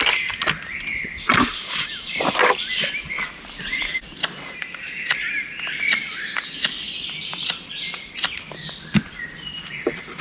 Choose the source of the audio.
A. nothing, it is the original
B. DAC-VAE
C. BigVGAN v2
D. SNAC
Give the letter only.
C